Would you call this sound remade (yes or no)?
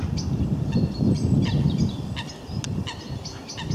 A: no